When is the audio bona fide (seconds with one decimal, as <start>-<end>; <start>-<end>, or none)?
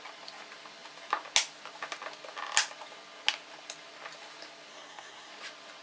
0.0-4.7; 5.3-5.8